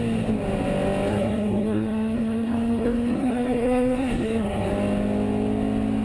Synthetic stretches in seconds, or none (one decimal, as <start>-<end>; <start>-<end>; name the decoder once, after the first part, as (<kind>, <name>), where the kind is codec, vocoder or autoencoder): 1.1-4.7 (codec, SNAC)